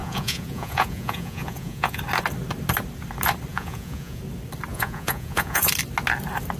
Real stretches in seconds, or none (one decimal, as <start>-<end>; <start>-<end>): 2.0-3.5; 4.2-4.7; 5.7-6.6

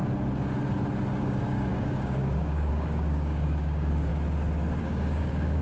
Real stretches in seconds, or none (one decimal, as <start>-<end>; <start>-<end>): 0.0-1.2; 4.1-4.8